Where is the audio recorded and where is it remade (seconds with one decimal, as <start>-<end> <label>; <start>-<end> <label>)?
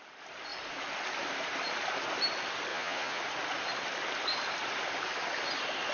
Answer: 0.0-2.7 recorded; 2.7-3.2 remade; 3.2-5.9 recorded